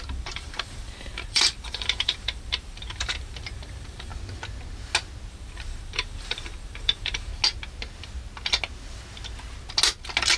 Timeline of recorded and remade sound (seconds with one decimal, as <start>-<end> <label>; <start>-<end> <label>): 0.0-4.1 remade; 4.1-5.3 recorded; 5.3-7.3 remade; 7.3-10.4 recorded